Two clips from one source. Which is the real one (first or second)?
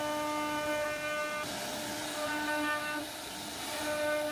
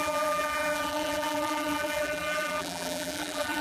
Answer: first